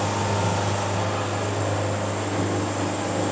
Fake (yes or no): no